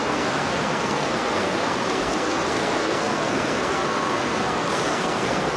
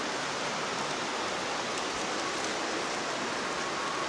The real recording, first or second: second